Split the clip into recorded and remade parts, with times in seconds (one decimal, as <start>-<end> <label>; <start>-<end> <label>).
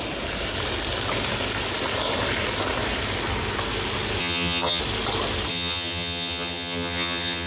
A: 0.0-4.2 recorded; 4.2-4.8 remade; 4.8-5.5 recorded; 5.5-7.5 remade